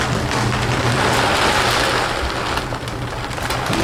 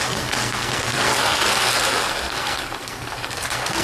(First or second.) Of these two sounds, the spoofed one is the second